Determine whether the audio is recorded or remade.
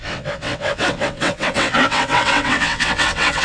remade